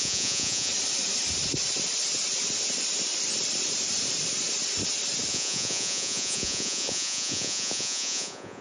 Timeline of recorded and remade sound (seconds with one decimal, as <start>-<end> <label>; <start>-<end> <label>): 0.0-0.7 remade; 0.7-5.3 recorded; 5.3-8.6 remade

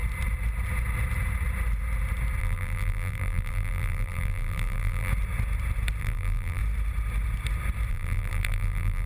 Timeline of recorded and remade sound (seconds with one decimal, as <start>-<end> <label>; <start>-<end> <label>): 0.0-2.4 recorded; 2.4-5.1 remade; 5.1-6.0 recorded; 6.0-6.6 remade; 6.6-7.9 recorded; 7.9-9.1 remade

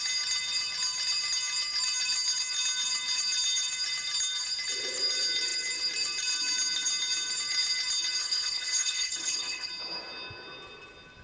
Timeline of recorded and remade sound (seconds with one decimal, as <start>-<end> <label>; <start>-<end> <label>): 0.0-8.2 recorded; 8.2-9.7 remade; 9.7-11.2 recorded